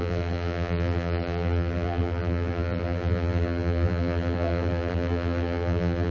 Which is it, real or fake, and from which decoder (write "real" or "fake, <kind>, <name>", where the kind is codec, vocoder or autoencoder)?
fake, vocoder, BigVGAN v2